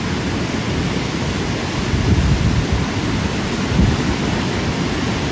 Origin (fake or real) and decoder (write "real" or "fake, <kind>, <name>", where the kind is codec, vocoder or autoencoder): real